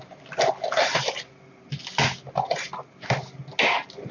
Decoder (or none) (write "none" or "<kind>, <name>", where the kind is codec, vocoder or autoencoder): none